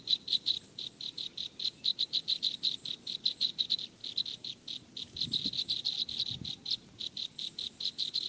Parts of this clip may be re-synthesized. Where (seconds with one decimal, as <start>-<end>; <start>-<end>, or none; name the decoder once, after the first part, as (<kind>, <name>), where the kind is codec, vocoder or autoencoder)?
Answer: 0.0-4.0 (vocoder, BigVGAN v2); 7.0-8.3